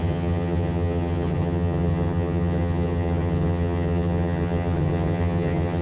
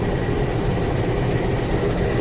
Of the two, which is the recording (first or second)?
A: second